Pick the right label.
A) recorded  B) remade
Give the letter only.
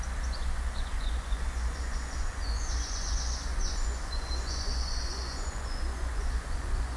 B